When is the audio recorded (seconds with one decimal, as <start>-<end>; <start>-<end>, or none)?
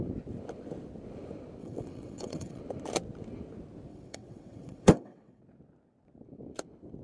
0.0-1.6; 2.6-3.9; 5.4-7.0